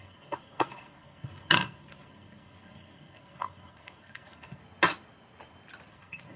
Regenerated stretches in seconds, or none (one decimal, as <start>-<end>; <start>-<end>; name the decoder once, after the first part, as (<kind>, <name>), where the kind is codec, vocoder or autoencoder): 0.0-4.6 (codec, SNAC); 5.9-6.4